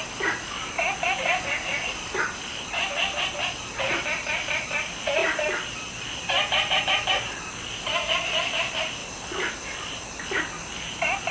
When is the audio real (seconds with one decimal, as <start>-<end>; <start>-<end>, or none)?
0.0-11.3